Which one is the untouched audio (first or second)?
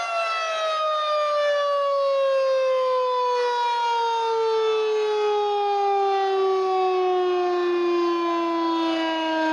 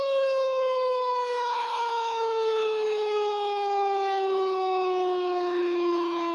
first